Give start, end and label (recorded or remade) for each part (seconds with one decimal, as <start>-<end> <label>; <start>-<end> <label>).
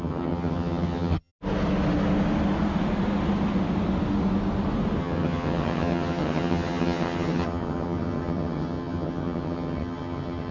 0.0-1.3 remade; 1.3-5.0 recorded; 5.0-10.5 remade